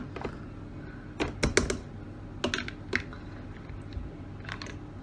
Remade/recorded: recorded